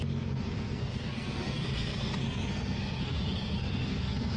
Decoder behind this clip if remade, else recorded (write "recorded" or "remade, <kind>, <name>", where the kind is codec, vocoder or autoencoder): remade, codec, SNAC